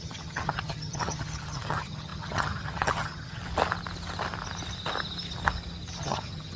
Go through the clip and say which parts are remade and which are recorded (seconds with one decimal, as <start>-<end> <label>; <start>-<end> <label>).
0.0-3.4 remade; 3.4-6.0 recorded; 6.0-6.6 remade

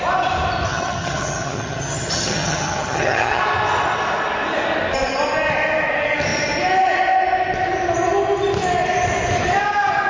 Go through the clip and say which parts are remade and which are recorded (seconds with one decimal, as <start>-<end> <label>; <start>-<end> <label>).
0.0-0.7 recorded; 0.7-3.4 remade; 3.4-10.1 recorded